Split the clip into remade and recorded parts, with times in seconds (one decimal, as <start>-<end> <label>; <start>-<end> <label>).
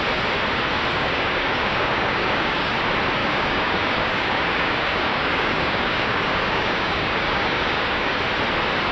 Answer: 0.0-0.9 recorded; 0.9-2.7 remade; 2.7-3.2 recorded; 3.2-8.2 remade; 8.2-8.9 recorded